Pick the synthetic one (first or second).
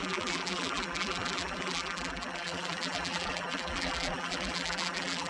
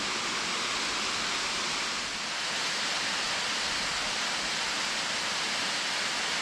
first